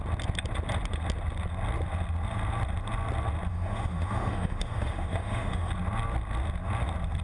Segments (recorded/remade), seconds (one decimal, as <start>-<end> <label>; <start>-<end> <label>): 0.0-3.5 recorded; 3.5-5.7 remade; 5.7-7.2 recorded